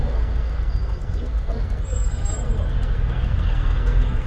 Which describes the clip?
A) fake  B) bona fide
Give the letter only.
A